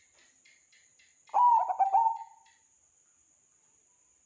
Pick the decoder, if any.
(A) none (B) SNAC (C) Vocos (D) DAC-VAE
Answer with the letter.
A